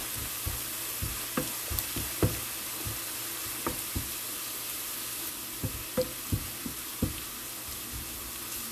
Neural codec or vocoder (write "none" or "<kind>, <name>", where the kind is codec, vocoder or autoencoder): none